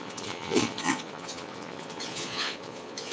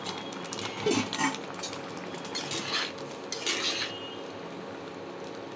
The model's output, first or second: first